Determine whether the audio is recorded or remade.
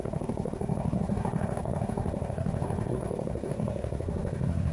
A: remade